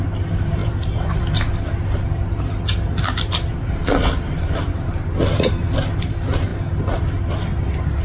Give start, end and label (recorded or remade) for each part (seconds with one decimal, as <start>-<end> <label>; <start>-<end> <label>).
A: 0.0-0.6 recorded; 0.6-4.3 remade; 4.3-6.5 recorded; 6.5-7.0 remade; 7.0-8.0 recorded